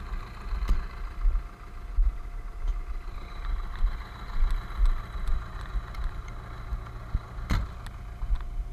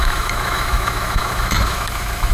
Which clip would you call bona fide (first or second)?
first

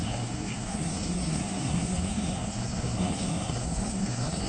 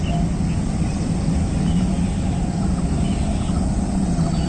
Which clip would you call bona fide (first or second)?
second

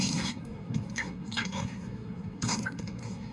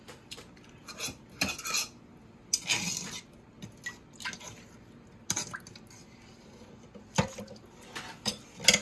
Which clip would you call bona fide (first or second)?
second